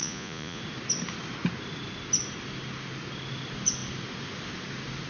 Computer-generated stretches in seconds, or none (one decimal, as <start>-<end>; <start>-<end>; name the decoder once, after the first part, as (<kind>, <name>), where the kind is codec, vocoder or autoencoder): 0.0-0.6 (vocoder, Vocos)

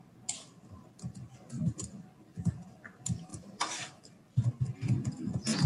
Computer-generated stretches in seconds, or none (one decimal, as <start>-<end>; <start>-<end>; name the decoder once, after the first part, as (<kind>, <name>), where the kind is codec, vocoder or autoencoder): 3.3-4.2 (vocoder, BigVGAN v2)

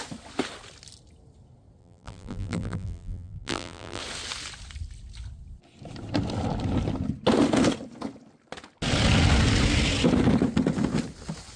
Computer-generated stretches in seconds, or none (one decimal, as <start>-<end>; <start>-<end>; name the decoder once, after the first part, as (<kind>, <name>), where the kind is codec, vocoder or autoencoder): 1.8-4.0 (vocoder, BigVGAN v2)